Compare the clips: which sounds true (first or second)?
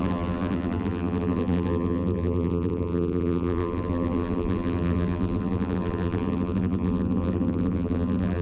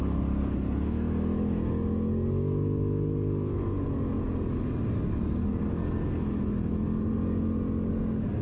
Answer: second